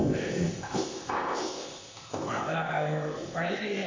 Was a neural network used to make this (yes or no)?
yes